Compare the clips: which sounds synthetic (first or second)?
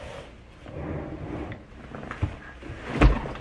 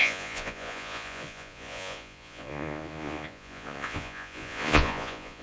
second